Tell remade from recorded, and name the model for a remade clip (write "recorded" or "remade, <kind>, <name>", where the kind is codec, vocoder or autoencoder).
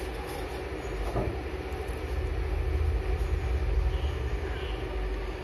recorded